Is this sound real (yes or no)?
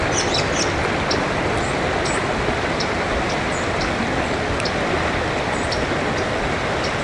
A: yes